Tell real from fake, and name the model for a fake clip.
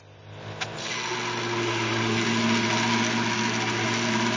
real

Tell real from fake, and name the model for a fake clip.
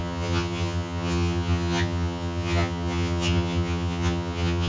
fake, vocoder, HiFi-GAN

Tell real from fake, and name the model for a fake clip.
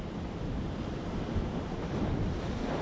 real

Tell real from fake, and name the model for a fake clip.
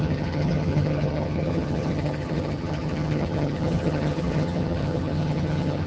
fake, vocoder, HiFi-GAN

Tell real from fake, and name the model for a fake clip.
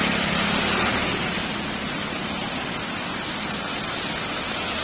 real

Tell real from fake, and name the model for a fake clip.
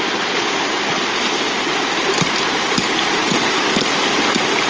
real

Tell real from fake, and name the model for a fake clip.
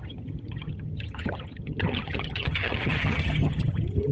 fake, vocoder, HiFi-GAN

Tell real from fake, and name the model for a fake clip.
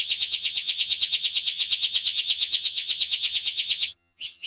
fake, vocoder, HiFi-GAN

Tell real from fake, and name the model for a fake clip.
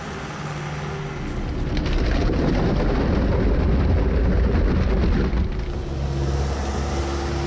real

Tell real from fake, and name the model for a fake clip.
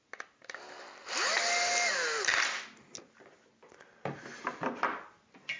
real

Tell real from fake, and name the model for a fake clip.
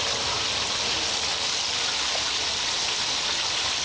real